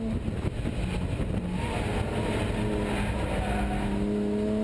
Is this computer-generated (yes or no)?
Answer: no